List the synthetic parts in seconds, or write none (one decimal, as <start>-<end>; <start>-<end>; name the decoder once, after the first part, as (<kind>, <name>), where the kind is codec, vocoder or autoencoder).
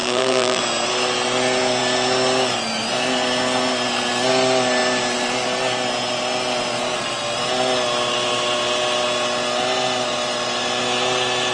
0.0-0.6 (vocoder, BigVGAN v2)